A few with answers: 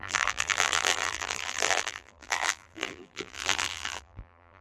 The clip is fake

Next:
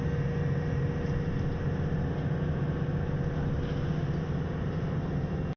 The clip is real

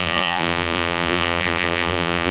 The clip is fake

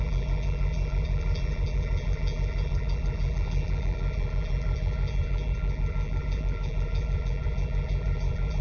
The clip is fake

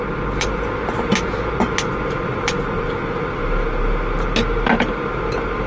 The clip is real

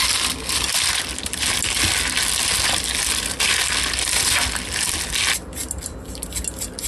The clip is real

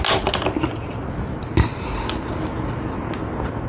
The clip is real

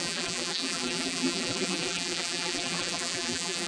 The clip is fake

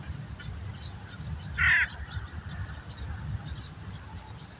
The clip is real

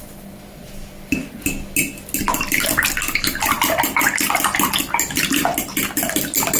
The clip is real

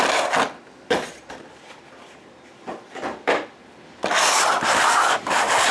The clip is fake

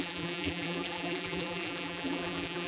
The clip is fake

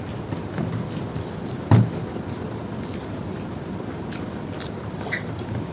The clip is fake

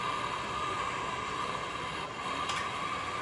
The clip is fake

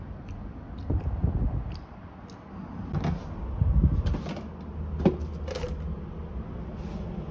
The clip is real